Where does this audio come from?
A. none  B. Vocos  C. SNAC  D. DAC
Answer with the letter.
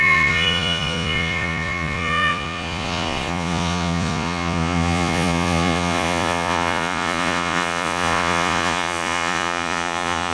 B